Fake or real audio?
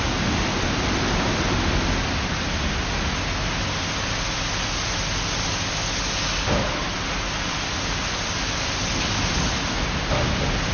real